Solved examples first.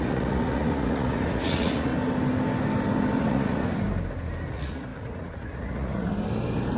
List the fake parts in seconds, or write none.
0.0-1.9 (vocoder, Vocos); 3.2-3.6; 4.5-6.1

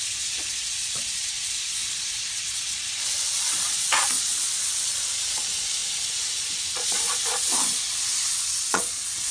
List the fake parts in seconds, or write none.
0.0-9.3 (vocoder, Vocos)

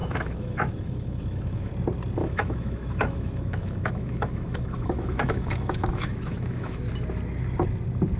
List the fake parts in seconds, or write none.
0.0-1.7 (autoencoder, DAC-VAE); 2.2-6.8

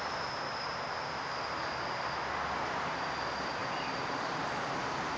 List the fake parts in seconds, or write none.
none

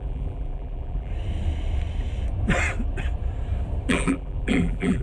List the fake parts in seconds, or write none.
0.0-1.1 (vocoder, BigVGAN v2); 3.9-5.0

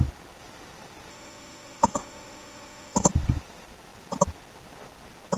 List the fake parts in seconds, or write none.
1.1-3.1 (autoencoder, DAC-VAE)

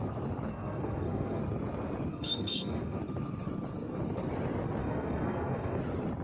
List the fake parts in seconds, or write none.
0.5-1.4 (codec, SNAC); 2.1-3.0; 4.8-5.8